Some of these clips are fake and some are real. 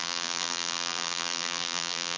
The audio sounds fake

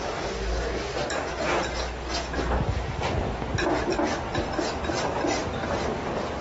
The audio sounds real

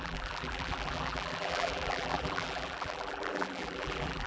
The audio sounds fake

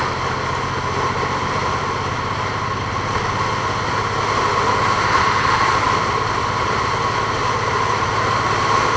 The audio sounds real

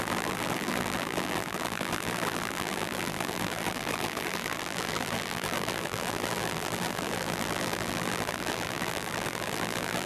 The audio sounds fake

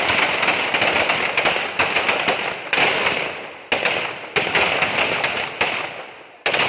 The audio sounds real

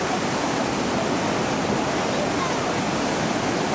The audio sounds real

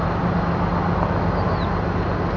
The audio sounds real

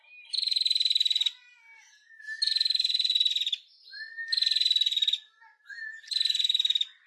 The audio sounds real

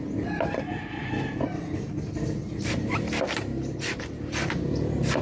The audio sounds real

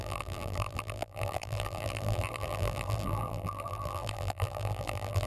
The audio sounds fake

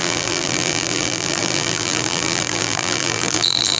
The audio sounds fake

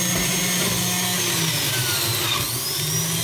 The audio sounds real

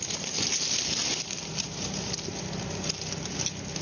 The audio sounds real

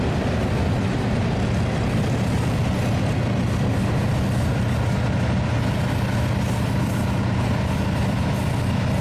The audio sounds real